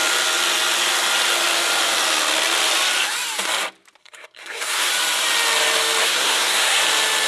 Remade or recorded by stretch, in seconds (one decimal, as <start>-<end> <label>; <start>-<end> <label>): 0.0-4.0 recorded; 4.0-4.9 remade; 4.9-6.0 recorded; 6.0-6.8 remade; 6.8-7.3 recorded